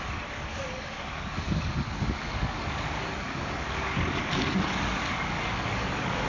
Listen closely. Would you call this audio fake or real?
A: fake